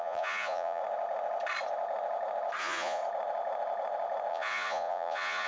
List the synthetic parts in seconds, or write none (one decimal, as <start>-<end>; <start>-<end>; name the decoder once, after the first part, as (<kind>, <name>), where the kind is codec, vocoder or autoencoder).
0.0-0.8 (vocoder, Vocos); 2.6-3.0; 4.3-5.5